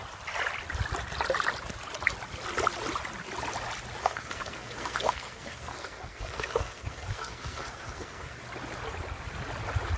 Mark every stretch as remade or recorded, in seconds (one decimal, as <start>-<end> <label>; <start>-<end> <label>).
0.0-4.0 recorded; 4.0-8.4 remade; 8.4-10.0 recorded